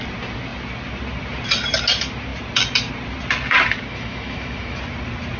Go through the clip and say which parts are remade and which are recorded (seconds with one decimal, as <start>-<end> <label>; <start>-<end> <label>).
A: 0.0-3.9 recorded; 3.9-4.8 remade; 4.8-5.4 recorded